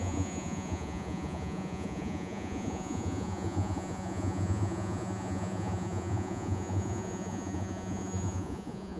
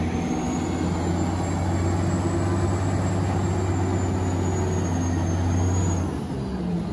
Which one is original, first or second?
second